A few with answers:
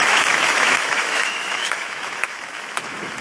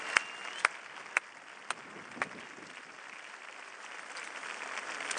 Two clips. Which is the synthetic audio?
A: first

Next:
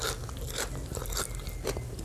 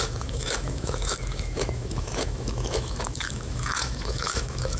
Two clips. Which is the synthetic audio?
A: second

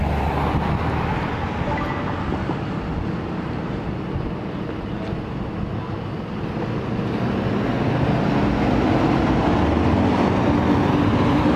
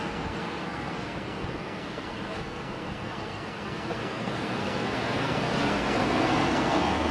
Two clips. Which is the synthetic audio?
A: second